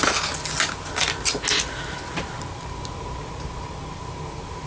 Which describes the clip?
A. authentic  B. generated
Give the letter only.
A